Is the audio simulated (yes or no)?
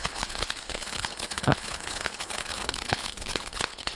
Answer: yes